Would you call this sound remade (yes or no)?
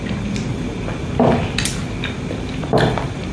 no